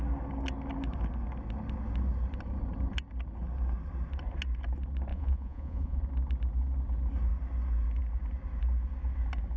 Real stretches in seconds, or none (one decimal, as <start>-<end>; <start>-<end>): 0.0-5.1; 6.0-9.6